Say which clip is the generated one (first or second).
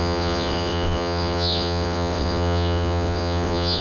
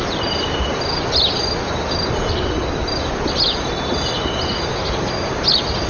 first